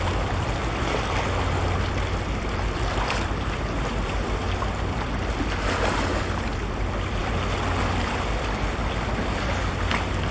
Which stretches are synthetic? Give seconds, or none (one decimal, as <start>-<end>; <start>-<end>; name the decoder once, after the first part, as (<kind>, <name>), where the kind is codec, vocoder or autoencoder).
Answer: none